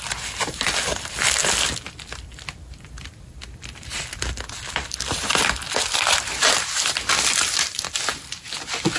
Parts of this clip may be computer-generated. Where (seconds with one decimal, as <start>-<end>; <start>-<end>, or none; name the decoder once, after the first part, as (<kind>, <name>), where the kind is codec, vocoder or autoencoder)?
0.0-9.0 (vocoder, BigVGAN v2)